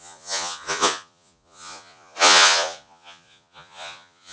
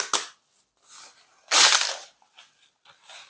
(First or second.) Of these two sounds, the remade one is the first